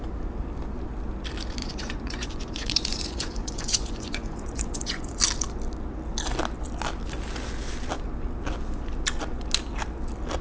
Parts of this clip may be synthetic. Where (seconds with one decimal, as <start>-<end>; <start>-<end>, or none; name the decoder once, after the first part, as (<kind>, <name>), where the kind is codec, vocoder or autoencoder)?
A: 1.6-5.2 (vocoder, Vocos)